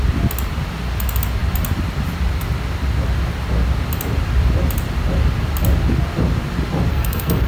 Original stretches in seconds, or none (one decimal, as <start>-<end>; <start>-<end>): 0.0-6.9